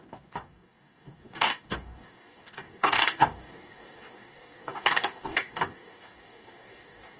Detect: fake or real fake